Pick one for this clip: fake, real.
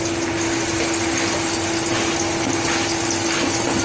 real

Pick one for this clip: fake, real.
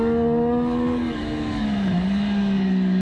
fake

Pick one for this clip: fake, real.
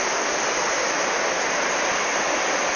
real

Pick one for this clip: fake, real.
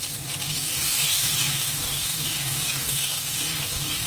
fake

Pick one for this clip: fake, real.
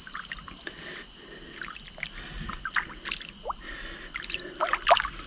real